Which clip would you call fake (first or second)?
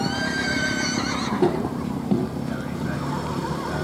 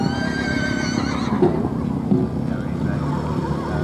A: first